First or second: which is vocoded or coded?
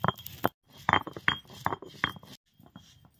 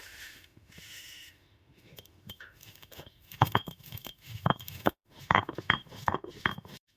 second